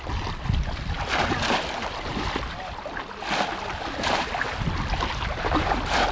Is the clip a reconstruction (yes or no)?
no